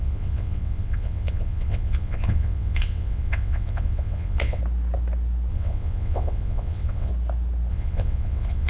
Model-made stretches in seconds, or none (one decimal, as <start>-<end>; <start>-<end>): 0.0-4.6; 5.5-7.1; 7.7-8.7